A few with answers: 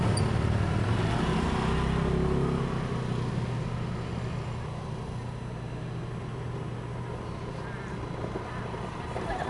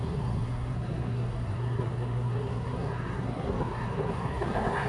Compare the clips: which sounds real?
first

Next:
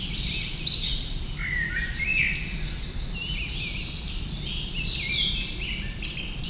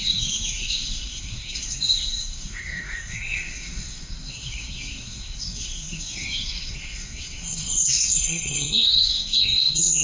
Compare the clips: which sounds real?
first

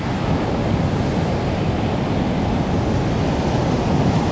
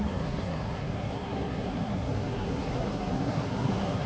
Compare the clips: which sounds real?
first